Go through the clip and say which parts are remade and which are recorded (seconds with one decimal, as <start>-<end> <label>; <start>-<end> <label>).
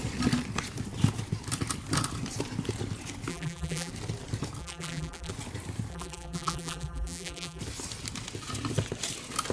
0.0-3.3 recorded; 3.3-3.9 remade; 3.9-4.6 recorded; 4.6-5.3 remade; 5.3-5.9 recorded; 5.9-7.6 remade; 7.6-9.5 recorded